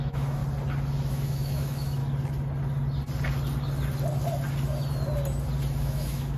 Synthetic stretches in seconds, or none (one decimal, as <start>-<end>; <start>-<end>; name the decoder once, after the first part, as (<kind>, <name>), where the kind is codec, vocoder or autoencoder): 0.0-0.4 (autoencoder, DAC-VAE); 1.1-2.0; 5.8-6.4